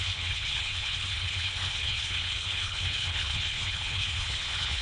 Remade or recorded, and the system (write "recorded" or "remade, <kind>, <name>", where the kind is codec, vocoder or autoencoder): remade, codec, HILCodec